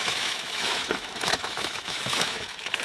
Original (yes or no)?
no